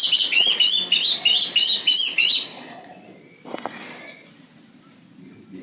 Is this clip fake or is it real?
real